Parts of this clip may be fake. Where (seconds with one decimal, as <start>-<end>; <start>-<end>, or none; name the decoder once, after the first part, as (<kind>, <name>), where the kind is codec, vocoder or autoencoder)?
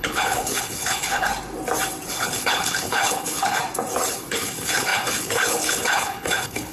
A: 0.0-1.3 (codec, HILCodec); 2.1-3.6; 4.1-6.7